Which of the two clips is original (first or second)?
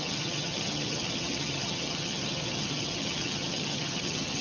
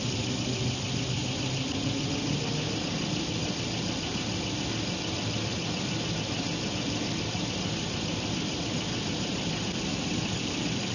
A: second